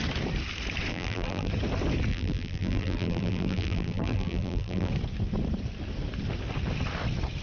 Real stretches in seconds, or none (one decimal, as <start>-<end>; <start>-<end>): 0.0-0.9; 1.5-2.1; 4.9-7.4